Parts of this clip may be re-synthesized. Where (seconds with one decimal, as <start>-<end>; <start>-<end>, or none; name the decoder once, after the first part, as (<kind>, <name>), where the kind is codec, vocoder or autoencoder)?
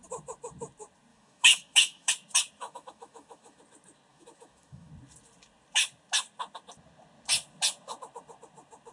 1.1-2.1 (autoencoder, DAC-VAE); 2.6-3.6; 4.1-4.9